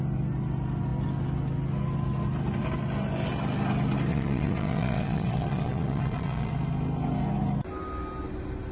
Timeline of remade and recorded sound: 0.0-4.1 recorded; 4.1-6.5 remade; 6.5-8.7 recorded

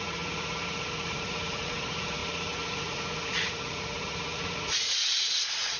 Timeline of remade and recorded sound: 0.0-5.8 remade

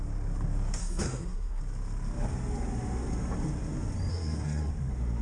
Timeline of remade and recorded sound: 0.0-0.8 recorded; 0.8-1.6 remade; 1.6-4.1 recorded; 4.1-4.7 remade; 4.7-5.2 recorded

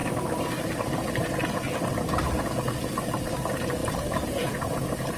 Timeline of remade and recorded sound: 0.0-1.4 remade; 1.4-1.9 recorded; 1.9-2.9 remade; 2.9-3.8 recorded; 3.8-4.5 remade; 4.5-5.2 recorded

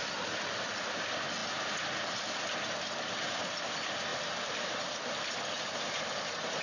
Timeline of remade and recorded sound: 0.0-6.6 recorded

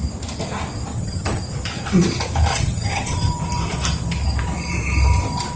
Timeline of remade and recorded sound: 0.0-0.9 recorded; 0.9-1.4 remade; 1.4-2.5 recorded; 2.5-3.4 remade; 3.4-5.6 recorded